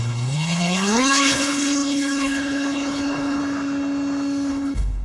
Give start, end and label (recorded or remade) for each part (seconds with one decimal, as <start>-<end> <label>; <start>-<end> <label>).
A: 0.0-3.4 remade; 3.4-4.5 recorded; 4.5-5.0 remade